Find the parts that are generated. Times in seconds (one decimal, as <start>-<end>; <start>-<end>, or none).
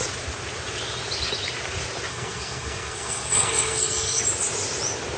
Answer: 2.1-4.2